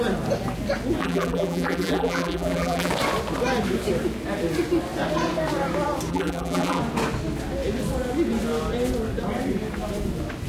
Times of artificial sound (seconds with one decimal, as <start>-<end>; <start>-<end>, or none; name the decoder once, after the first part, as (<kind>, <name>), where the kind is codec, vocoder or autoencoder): 1.0-2.9 (vocoder, BigVGAN v2); 6.1-6.8